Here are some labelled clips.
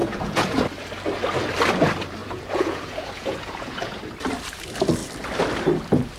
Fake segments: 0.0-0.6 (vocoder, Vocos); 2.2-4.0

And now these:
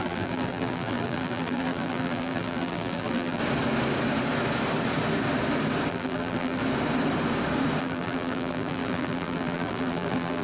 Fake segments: 0.0-3.4 (vocoder, BigVGAN v2); 5.9-6.6; 7.8-10.4

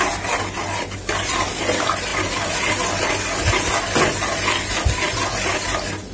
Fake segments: none